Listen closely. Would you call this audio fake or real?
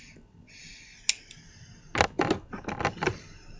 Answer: real